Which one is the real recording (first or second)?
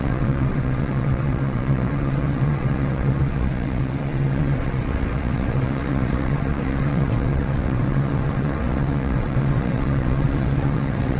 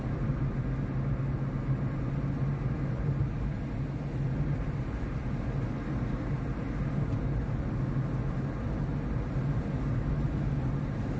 second